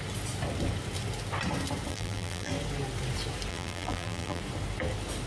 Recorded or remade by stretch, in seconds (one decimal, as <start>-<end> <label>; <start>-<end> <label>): 0.0-1.9 recorded; 1.9-2.5 remade; 2.5-3.5 recorded; 3.5-4.4 remade; 4.4-5.3 recorded